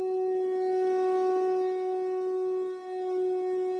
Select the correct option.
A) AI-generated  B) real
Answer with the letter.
B